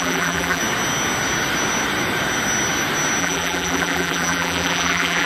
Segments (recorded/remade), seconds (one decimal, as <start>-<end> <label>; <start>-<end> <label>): 0.0-0.6 remade; 0.6-3.2 recorded; 3.2-5.2 remade